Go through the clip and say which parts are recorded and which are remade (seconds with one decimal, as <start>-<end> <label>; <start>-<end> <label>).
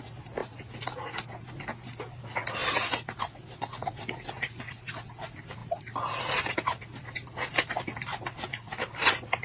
0.0-9.4 recorded